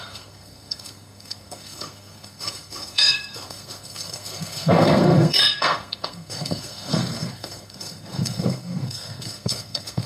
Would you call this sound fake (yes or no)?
yes